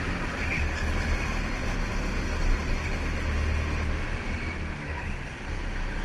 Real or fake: real